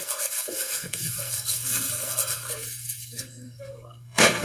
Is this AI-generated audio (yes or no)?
yes